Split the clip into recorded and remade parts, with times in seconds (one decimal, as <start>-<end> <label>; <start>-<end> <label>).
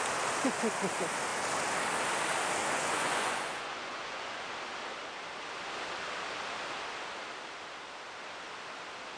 0.0-2.6 recorded; 2.6-4.4 remade; 4.4-9.2 recorded